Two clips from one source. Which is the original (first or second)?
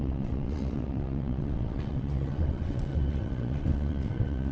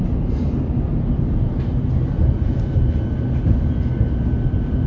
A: second